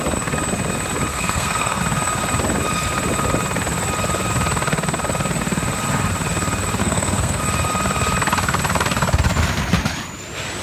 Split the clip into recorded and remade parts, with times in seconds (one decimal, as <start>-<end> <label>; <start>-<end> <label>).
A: 0.0-1.1 recorded; 1.1-1.8 remade; 1.8-6.8 recorded; 6.8-7.4 remade; 7.4-10.6 recorded